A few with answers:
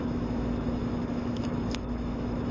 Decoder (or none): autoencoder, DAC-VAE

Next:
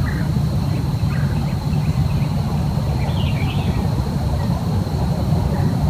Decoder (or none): none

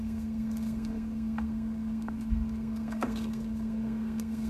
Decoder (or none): codec, SNAC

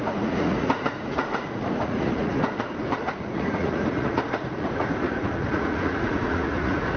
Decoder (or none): vocoder, Vocos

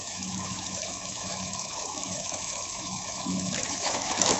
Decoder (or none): autoencoder, DAC-VAE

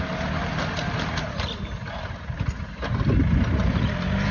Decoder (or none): none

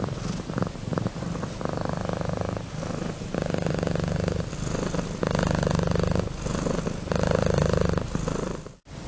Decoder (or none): none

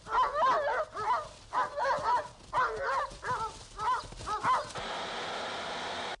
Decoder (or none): none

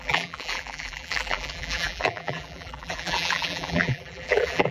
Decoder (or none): vocoder, BigVGAN v2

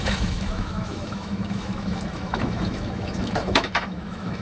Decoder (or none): autoencoder, DAC-VAE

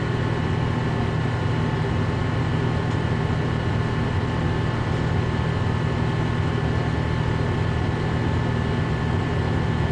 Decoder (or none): none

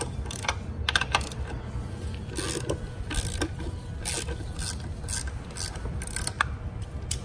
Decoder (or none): none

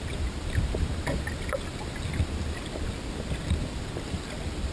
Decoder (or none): none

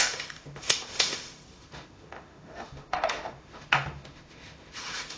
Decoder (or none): autoencoder, DAC-VAE